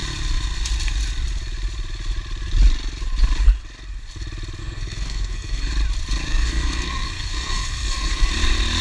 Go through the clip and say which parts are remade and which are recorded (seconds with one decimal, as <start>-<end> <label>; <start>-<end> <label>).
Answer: 0.0-4.6 recorded; 4.6-5.7 remade; 5.7-6.3 recorded; 6.3-8.3 remade; 8.3-8.8 recorded